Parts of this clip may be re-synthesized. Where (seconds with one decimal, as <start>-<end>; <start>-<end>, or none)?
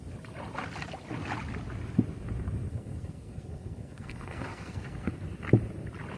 2.7-5.1